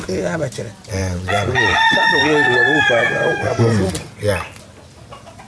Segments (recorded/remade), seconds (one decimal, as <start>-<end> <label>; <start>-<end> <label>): 0.0-1.0 recorded; 1.0-3.9 remade; 3.9-5.5 recorded